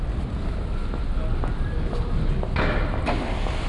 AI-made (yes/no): no